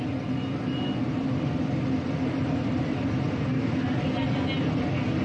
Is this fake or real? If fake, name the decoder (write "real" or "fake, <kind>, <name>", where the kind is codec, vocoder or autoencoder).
real